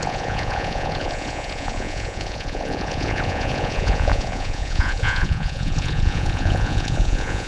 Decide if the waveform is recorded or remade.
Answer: remade